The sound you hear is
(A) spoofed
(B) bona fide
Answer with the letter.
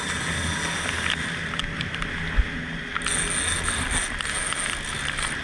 B